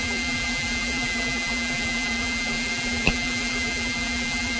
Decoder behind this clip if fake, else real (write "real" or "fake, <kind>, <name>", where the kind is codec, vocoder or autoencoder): fake, vocoder, BigVGAN v2